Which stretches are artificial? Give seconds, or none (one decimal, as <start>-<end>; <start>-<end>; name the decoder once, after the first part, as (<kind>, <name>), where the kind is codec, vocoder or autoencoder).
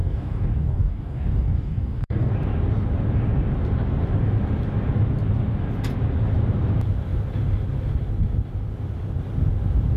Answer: 0.0-2.3 (codec, DAC)